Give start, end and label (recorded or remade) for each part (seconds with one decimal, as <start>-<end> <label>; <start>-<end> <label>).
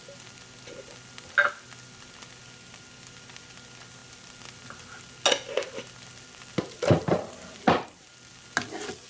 0.0-9.1 recorded